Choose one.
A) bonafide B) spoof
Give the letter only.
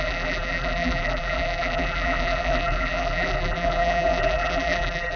B